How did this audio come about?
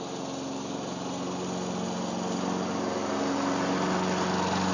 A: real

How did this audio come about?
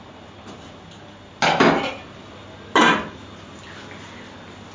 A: real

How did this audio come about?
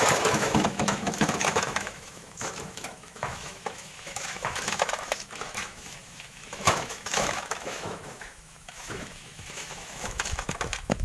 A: fake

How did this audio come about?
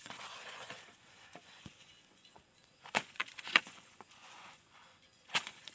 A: fake